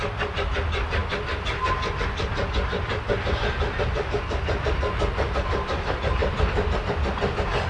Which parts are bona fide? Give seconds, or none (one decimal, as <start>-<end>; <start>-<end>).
0.0-7.7